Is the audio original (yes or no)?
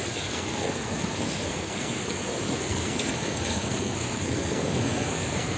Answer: no